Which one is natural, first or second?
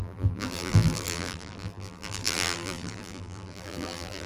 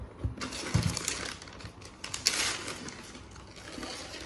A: second